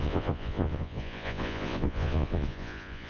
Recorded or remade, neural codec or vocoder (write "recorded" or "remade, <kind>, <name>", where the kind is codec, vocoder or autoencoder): remade, vocoder, Vocos